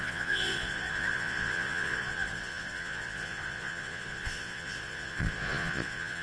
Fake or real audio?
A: fake